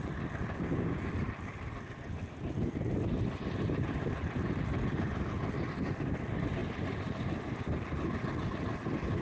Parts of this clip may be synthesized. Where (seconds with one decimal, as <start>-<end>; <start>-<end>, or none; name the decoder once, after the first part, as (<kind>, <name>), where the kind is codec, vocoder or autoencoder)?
0.4-1.1 (codec, DAC)